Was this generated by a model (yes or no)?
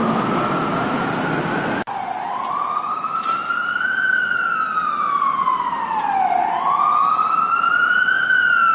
no